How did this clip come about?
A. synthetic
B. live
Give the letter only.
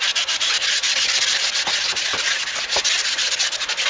B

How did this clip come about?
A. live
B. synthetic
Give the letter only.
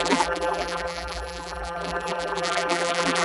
B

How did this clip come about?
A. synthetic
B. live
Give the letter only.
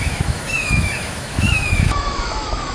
A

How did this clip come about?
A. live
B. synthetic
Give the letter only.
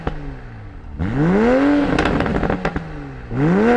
A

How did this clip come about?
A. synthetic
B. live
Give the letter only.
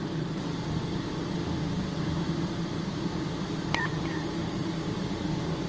A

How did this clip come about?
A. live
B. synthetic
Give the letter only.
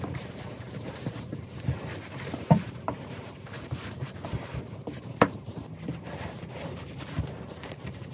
B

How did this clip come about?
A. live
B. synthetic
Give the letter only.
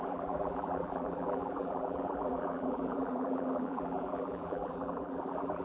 B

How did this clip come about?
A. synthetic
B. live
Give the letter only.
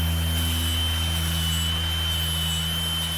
B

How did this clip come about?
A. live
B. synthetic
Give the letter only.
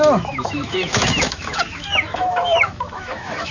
B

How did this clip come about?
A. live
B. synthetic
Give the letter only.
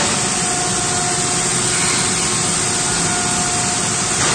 A